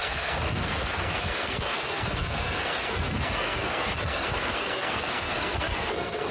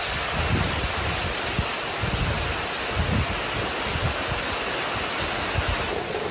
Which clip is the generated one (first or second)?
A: first